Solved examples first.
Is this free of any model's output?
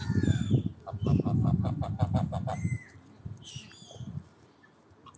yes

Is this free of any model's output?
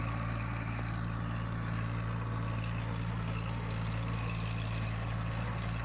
yes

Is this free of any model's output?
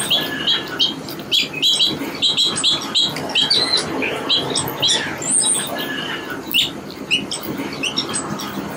yes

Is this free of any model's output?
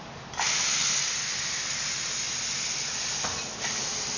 yes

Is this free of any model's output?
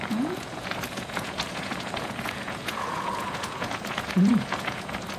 no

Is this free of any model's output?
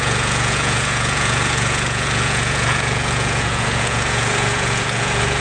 no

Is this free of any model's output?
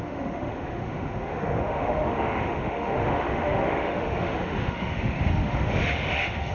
no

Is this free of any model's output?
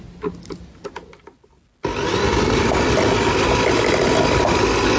yes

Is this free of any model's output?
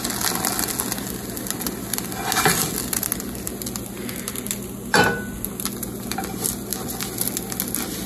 yes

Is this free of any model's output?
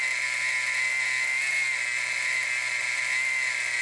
yes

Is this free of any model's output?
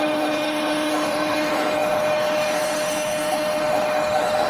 no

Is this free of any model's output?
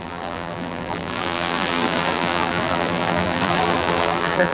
no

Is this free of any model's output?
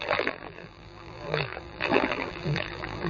no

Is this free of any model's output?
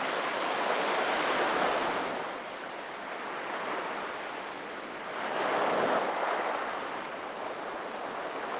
yes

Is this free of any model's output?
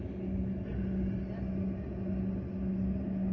yes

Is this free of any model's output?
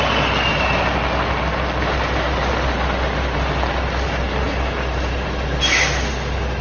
yes